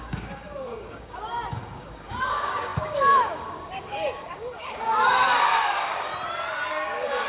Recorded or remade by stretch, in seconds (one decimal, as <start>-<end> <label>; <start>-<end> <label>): 0.0-6.1 remade; 6.1-6.7 recorded; 6.7-7.3 remade